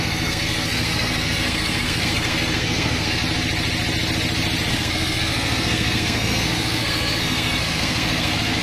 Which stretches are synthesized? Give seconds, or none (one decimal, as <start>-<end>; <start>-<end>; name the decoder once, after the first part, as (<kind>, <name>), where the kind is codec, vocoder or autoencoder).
0.0-3.2 (codec, SNAC); 4.7-8.6